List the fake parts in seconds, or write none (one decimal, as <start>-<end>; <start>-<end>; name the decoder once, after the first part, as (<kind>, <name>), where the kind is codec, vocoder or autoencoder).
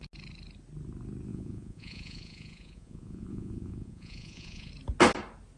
1.3-4.7 (vocoder, Vocos)